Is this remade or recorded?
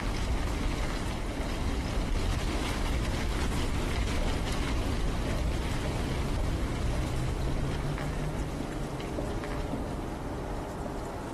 recorded